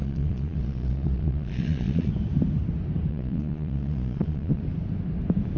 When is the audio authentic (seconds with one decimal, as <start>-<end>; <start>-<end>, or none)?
2.1-3.1; 4.6-5.6